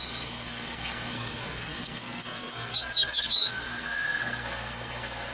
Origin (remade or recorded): remade